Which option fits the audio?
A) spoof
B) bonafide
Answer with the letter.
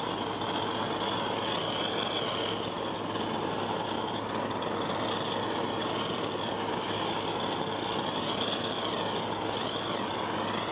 B